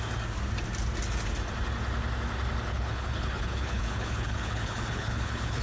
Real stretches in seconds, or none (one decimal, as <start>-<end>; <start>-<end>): 0.0-2.7